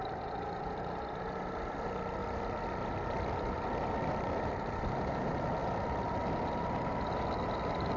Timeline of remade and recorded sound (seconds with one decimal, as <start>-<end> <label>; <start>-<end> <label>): 0.0-8.0 recorded